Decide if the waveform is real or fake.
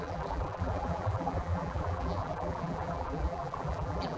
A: fake